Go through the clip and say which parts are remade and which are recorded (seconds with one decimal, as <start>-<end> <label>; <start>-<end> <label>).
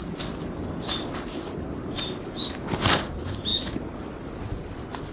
0.0-5.1 recorded